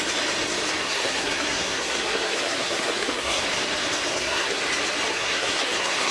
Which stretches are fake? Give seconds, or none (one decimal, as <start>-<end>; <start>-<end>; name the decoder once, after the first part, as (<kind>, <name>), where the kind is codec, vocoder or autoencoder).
0.8-3.4 (codec, SNAC); 4.1-4.6; 5.1-6.1